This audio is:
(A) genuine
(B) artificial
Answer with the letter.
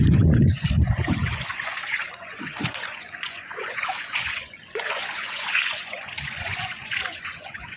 B